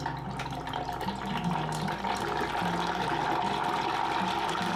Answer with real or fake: real